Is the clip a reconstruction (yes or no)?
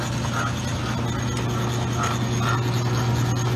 no